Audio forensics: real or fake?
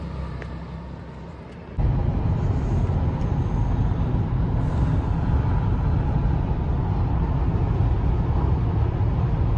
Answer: real